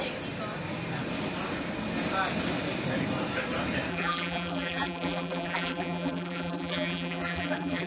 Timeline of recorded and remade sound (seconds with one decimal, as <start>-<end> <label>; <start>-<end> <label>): 0.0-3.9 recorded; 3.9-7.9 remade